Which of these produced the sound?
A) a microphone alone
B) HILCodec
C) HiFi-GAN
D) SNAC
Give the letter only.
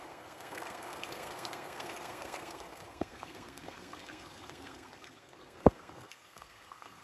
D